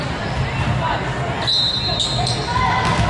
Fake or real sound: real